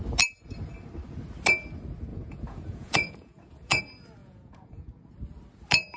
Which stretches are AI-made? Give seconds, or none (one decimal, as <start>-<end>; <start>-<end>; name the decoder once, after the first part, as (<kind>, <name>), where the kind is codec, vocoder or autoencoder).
2.1-3.8 (vocoder, Vocos); 4.2-5.1